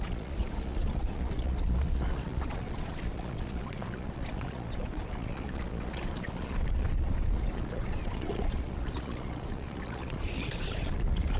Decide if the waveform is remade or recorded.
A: remade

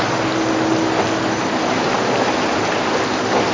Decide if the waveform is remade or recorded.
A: recorded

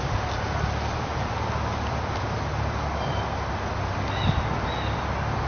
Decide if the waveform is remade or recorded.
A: recorded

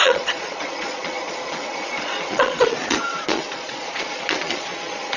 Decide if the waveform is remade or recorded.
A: remade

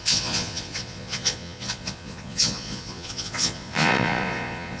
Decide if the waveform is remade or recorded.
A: remade